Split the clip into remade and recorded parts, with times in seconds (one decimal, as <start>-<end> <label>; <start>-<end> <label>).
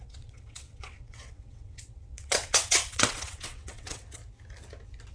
0.0-4.2 remade; 4.2-5.1 recorded